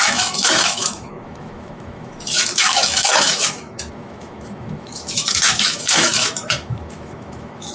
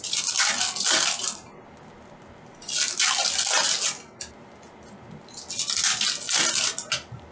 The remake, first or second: first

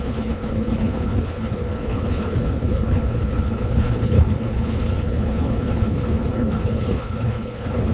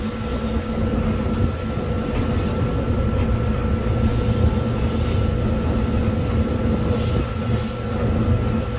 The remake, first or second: first